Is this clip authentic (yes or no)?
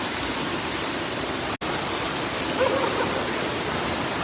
yes